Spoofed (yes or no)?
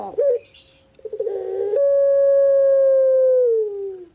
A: no